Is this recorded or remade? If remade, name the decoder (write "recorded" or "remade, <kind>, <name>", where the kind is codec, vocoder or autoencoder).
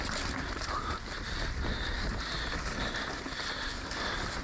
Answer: recorded